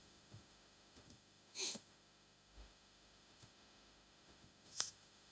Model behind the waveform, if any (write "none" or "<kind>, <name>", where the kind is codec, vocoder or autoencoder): autoencoder, DAC-VAE